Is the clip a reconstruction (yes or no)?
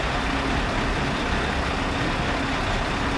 no